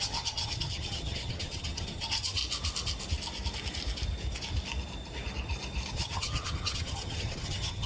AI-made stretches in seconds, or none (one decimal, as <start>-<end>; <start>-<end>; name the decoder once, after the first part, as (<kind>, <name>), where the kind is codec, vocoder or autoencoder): 0.0-2.4 (vocoder, HiFi-GAN); 5.9-7.9